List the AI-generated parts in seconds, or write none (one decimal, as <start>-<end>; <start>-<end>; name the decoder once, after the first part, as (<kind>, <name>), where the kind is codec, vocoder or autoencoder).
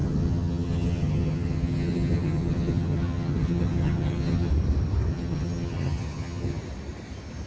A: 0.0-4.5 (vocoder, HiFi-GAN); 5.1-6.6